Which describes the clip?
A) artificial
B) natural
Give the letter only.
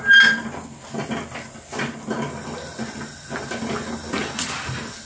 B